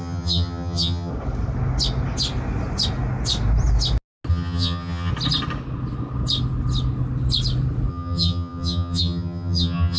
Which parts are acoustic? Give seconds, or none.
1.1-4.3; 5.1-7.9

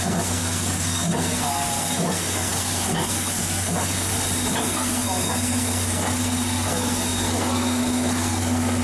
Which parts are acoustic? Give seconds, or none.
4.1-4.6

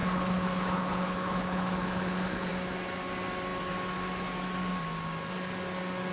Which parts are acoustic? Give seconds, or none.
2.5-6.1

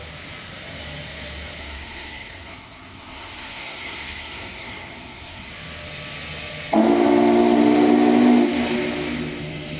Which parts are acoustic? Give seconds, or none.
0.0-1.6; 5.5-9.8

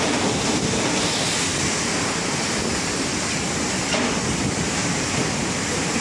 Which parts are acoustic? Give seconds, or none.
0.0-6.0

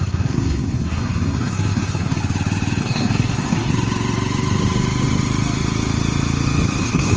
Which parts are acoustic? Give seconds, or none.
2.2-2.8; 3.7-6.8

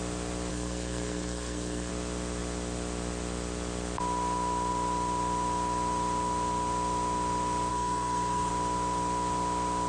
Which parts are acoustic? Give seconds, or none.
0.0-0.5; 1.9-7.7; 8.5-9.9

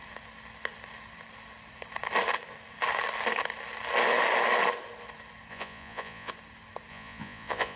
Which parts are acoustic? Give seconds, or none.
0.0-5.5; 6.3-6.9